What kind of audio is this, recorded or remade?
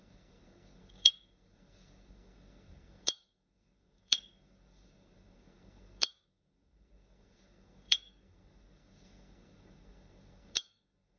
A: remade